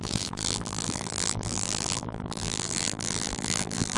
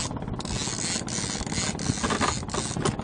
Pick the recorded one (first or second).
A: second